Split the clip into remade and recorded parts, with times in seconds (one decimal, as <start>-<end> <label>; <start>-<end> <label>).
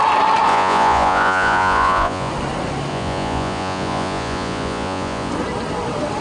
0.0-0.5 recorded; 0.5-2.3 remade; 2.3-2.9 recorded; 2.9-5.3 remade; 5.3-6.2 recorded